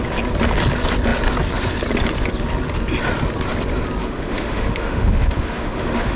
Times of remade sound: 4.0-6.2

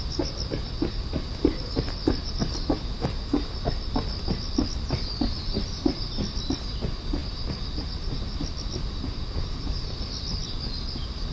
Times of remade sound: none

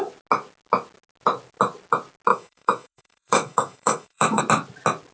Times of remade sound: 2.3-4.4

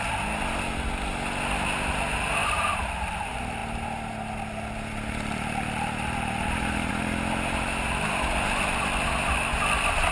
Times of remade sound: none

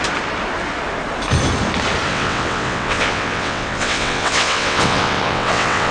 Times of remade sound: 2.1-5.9

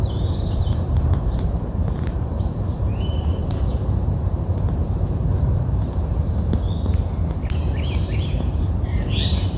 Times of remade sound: 0.0-6.1; 7.8-9.6

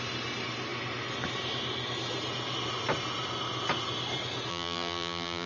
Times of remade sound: 4.5-5.5

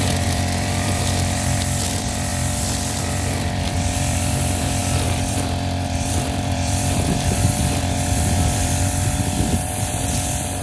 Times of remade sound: 0.0-10.6